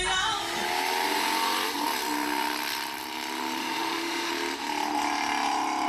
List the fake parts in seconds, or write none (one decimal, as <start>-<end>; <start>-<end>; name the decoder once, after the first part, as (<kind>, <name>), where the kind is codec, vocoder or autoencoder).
3.6-4.3 (autoencoder, DAC-VAE)